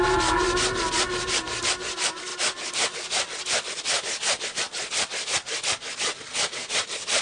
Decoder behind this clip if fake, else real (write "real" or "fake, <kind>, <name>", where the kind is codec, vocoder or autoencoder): real